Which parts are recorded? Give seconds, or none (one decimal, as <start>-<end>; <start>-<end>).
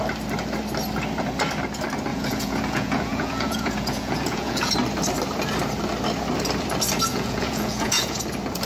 0.0-2.1; 4.7-7.1; 8.2-8.7